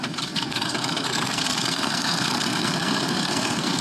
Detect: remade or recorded remade